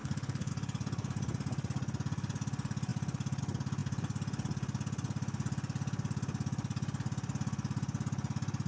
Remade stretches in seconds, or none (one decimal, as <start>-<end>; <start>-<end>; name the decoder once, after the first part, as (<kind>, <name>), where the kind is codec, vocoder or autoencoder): 0.0-0.5 (codec, HILCodec)